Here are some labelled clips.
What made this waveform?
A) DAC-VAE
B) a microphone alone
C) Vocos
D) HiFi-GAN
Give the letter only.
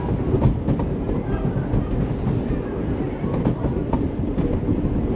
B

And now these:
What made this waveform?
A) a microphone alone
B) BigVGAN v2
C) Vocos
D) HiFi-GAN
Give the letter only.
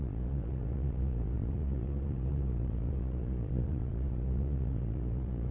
C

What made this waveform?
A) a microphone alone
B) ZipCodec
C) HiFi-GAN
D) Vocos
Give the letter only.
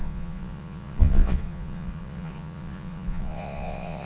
D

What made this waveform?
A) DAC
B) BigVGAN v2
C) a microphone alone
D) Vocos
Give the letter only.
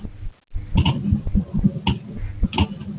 C